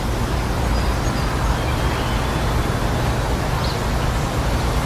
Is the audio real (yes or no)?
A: yes